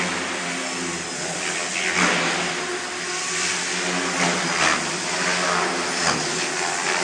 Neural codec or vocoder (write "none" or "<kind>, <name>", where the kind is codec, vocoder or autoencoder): none